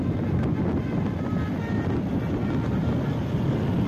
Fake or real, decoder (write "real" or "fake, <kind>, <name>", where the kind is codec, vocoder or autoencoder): real